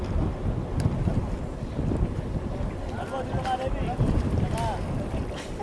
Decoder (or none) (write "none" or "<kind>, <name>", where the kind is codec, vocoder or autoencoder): none